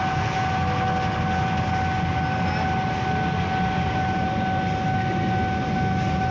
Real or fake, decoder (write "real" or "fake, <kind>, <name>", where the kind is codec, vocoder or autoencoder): real